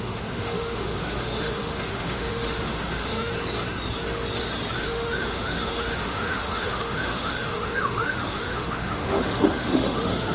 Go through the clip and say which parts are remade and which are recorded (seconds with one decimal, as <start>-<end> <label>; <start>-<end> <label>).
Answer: 0.0-3.3 remade; 3.3-4.8 recorded; 4.8-10.3 remade